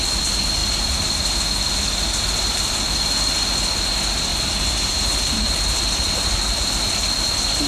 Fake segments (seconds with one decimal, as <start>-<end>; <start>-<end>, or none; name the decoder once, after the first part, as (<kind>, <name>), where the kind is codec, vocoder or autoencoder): none